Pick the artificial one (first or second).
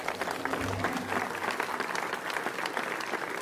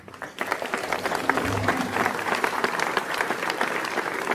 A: second